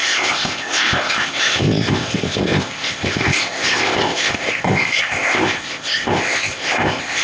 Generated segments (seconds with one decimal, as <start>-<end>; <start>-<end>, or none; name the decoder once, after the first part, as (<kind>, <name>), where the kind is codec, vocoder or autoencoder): 0.0-7.2 (codec, ZipCodec)